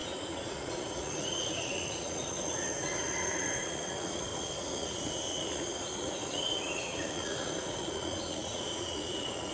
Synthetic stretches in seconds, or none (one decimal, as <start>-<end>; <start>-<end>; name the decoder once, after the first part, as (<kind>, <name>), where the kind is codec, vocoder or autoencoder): 0.0-9.5 (vocoder, Vocos)

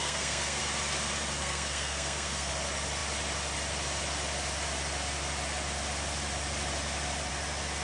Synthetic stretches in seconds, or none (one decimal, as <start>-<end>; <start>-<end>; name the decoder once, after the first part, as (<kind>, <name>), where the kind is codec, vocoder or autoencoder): 0.0-0.6 (codec, SNAC); 1.4-2.5

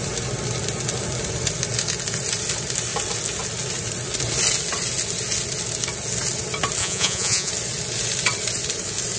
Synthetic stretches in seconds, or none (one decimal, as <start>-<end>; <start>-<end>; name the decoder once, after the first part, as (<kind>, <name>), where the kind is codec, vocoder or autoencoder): 6.8-7.5 (vocoder, Vocos)

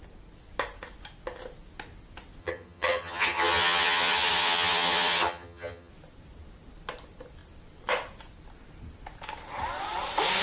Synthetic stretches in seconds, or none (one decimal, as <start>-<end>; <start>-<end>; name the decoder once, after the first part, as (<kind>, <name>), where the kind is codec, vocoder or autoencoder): 2.4-5.9 (vocoder, HiFi-GAN)

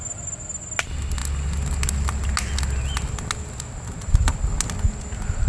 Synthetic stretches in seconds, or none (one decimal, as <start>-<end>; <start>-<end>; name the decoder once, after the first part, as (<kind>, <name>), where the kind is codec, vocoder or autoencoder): none